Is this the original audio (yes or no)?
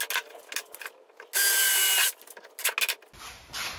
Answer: yes